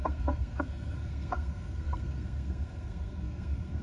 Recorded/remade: remade